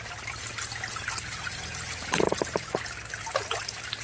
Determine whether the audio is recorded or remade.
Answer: recorded